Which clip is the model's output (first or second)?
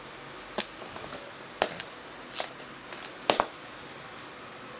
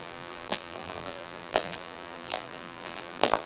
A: second